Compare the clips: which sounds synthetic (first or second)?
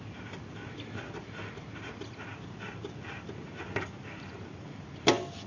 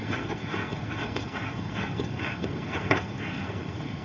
second